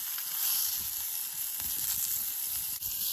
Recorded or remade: recorded